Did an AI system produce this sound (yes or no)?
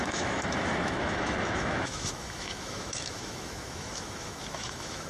yes